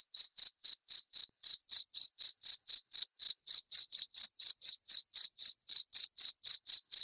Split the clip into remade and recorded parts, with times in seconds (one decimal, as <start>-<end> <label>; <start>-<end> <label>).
0.0-1.6 remade; 1.6-2.1 recorded; 2.1-3.4 remade; 3.4-6.6 recorded; 6.6-7.0 remade